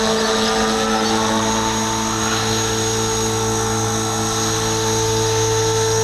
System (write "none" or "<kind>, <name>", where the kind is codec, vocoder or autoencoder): none